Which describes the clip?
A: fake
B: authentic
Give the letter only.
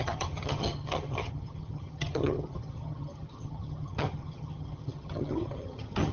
A